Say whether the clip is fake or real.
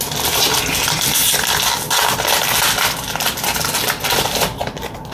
real